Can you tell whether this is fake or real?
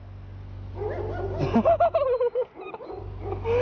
real